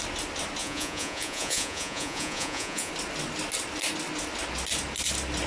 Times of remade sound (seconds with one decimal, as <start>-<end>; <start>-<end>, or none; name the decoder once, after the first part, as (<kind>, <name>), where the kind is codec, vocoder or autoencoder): 0.6-2.9 (vocoder, Vocos)